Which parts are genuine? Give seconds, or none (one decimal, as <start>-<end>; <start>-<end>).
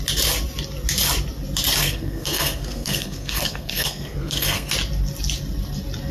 0.0-1.8; 4.7-6.1